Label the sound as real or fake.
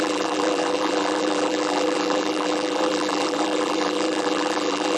fake